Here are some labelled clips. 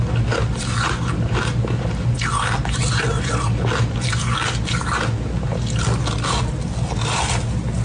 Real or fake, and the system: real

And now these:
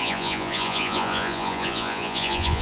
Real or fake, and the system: fake, vocoder, Vocos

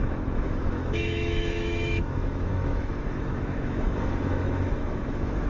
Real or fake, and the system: fake, autoencoder, DAC-VAE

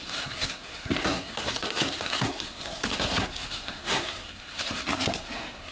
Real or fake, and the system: fake, codec, SNAC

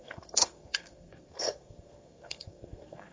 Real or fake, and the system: fake, codec, SNAC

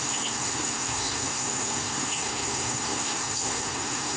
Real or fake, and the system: fake, codec, SNAC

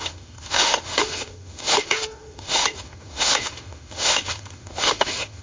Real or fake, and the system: fake, autoencoder, DAC-VAE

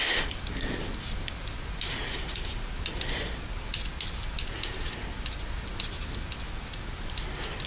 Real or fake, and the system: real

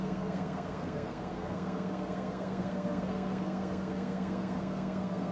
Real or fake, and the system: fake, codec, SNAC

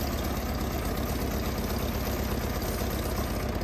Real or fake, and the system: real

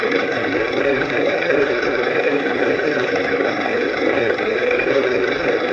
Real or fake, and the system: fake, codec, SNAC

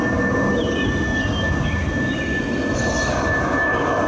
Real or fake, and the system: real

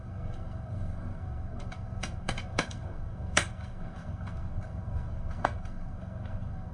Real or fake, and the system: fake, codec, SNAC